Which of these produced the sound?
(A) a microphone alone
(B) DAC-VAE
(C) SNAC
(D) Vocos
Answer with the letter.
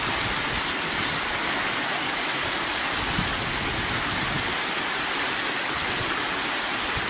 A